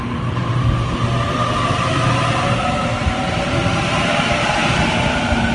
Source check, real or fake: real